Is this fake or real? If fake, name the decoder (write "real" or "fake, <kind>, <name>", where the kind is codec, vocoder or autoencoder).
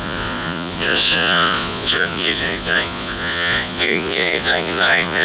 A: fake, vocoder, Vocos